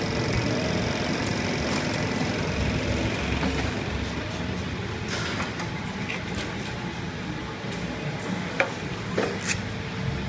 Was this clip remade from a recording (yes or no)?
no